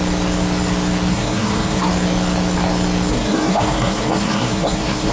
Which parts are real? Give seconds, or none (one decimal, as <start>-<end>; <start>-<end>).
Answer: 0.0-1.1; 1.9-3.1